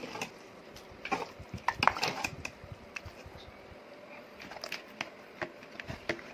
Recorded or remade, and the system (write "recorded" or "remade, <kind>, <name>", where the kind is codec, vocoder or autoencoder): recorded